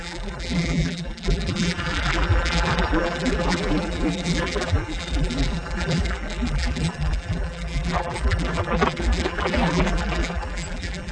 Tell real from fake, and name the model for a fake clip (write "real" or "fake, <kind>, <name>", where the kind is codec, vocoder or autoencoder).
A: fake, vocoder, BigVGAN v2